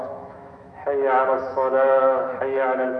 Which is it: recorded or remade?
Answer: remade